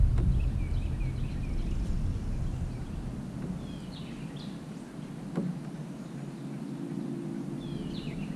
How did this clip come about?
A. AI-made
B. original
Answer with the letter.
B